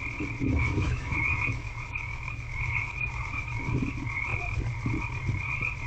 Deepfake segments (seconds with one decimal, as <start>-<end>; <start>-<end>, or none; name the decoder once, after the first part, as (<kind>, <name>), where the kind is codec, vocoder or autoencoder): 0.4-3.6 (autoencoder, DAC-VAE)